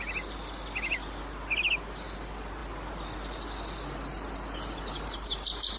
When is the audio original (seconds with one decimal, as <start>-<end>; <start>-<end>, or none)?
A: 0.0-5.8